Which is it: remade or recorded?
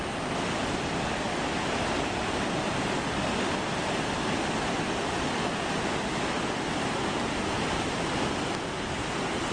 recorded